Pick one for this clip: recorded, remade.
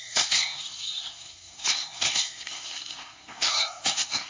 remade